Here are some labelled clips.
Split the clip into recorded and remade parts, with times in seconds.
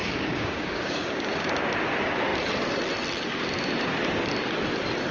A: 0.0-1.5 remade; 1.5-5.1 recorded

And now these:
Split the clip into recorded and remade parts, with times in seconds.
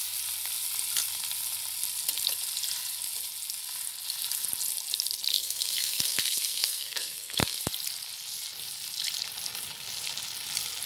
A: 0.0-5.3 recorded; 5.3-7.6 remade; 7.6-10.9 recorded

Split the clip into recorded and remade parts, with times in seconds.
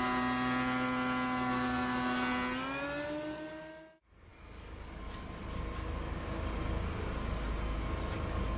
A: 0.0-4.3 recorded; 4.3-5.1 remade; 5.1-8.6 recorded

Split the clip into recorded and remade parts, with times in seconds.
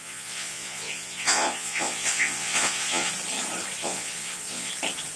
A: 0.0-3.1 remade; 3.1-3.8 recorded; 3.8-4.7 remade; 4.7-5.2 recorded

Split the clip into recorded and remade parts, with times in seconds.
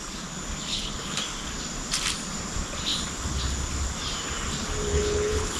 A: 0.0-0.7 recorded; 0.7-1.2 remade; 1.2-4.9 recorded; 4.9-5.6 remade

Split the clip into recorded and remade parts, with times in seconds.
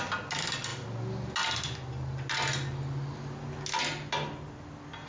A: 0.0-5.1 recorded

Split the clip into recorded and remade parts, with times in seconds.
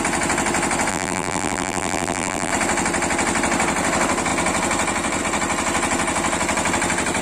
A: 0.0-0.9 recorded; 0.9-2.5 remade; 2.5-7.2 recorded